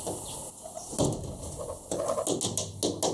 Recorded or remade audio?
recorded